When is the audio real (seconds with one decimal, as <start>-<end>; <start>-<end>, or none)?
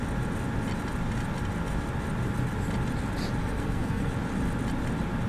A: 0.0-3.4; 4.1-5.3